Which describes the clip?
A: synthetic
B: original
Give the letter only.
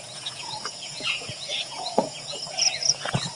A